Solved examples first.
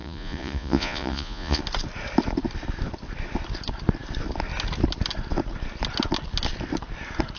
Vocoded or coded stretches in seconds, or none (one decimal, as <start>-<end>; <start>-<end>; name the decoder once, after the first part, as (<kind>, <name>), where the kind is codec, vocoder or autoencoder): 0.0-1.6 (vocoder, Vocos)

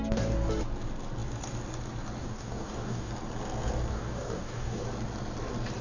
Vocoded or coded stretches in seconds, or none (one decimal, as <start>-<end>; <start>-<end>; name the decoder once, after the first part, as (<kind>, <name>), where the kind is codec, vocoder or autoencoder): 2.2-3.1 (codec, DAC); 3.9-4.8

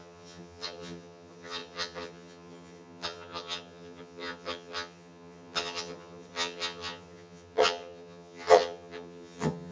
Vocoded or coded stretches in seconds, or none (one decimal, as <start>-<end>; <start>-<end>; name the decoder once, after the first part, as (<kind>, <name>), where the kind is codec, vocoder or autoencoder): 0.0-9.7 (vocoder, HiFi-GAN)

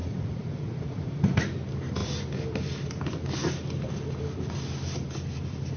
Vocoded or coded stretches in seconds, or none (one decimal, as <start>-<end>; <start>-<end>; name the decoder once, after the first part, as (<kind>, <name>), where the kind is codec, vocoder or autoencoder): 0.0-1.4 (vocoder, Vocos)

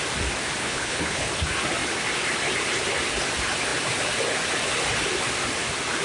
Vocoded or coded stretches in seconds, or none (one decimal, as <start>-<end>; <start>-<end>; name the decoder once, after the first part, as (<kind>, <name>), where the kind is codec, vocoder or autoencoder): 0.6-1.3 (codec, HILCodec)

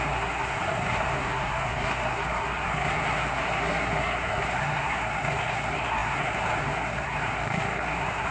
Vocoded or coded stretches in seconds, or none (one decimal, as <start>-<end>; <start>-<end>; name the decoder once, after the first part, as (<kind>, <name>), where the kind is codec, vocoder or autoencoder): 0.0-8.3 (codec, SNAC)

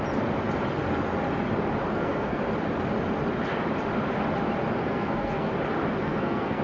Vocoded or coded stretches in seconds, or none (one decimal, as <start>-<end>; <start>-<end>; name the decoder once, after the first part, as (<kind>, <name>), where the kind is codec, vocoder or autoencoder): 1.9-2.4 (codec, SNAC); 4.8-5.5; 6.0-6.6